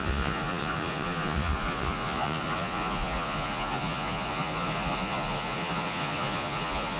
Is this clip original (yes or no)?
no